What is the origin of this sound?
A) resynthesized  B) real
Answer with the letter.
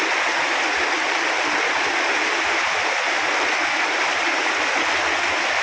B